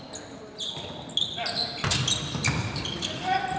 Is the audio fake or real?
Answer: real